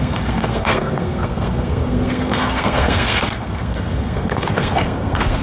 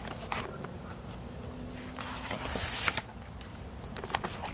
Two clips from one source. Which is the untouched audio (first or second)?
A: second